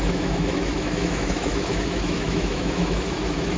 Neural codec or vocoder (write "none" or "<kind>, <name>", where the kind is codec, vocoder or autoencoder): autoencoder, DAC-VAE